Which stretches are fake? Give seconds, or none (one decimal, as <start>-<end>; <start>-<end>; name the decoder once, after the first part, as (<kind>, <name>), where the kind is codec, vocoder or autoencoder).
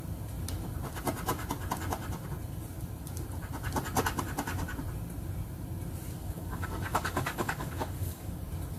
6.2-8.3 (codec, DAC)